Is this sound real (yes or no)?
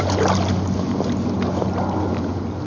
yes